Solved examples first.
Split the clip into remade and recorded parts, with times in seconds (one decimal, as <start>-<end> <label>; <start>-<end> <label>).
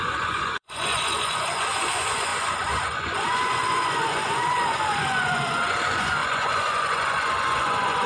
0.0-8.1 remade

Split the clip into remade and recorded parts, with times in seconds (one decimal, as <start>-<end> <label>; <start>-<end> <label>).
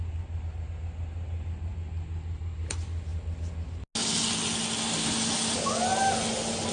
0.0-6.7 recorded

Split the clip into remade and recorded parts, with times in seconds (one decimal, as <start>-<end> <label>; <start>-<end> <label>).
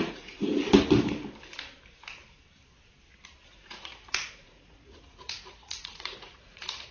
0.0-0.5 remade; 0.5-3.5 recorded; 3.5-6.9 remade